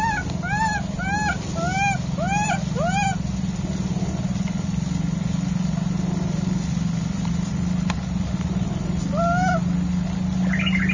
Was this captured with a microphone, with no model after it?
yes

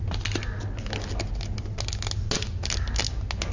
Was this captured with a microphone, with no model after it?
yes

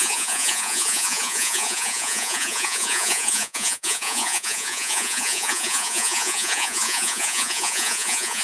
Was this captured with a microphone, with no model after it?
no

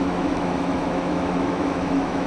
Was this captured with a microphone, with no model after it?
no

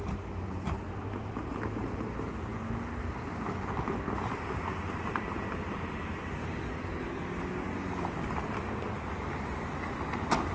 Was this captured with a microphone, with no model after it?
yes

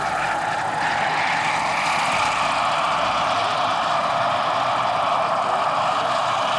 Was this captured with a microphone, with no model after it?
yes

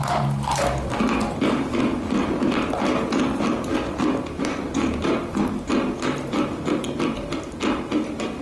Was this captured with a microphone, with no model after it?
yes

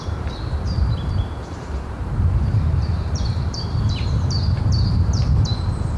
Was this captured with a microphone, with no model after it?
no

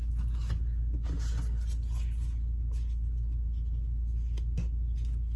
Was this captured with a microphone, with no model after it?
yes